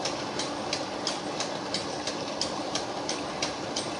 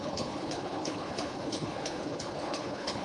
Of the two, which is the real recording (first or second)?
first